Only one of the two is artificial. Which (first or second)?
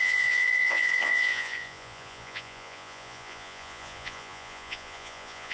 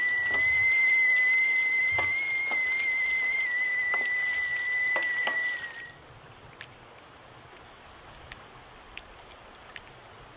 first